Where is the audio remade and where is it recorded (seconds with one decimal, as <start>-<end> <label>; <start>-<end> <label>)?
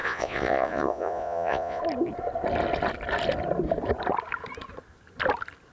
0.0-1.8 remade; 1.8-5.7 recorded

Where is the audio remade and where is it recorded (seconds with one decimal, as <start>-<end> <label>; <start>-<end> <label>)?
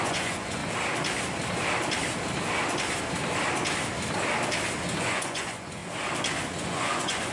0.0-0.6 remade; 0.6-5.0 recorded; 5.0-5.8 remade; 5.8-6.5 recorded; 6.5-7.3 remade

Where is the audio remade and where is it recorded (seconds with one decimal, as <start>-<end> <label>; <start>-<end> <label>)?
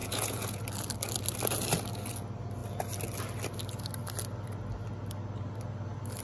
0.0-0.6 remade; 0.6-6.2 recorded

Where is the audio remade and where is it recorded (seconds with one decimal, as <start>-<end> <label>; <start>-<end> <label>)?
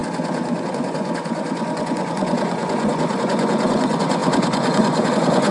0.0-5.5 remade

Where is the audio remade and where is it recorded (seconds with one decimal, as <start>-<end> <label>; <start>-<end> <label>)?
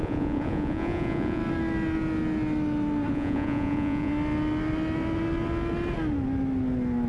0.0-1.4 remade; 1.4-3.1 recorded; 3.1-4.1 remade; 4.1-7.1 recorded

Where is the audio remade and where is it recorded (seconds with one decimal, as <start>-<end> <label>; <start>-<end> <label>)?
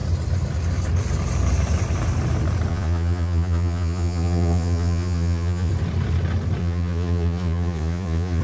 0.0-2.7 recorded; 2.7-5.7 remade; 5.7-6.6 recorded; 6.6-8.4 remade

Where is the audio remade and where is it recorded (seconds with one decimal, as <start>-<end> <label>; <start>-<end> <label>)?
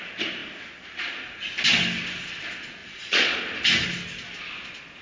0.0-2.8 recorded; 2.8-3.4 remade; 3.4-5.0 recorded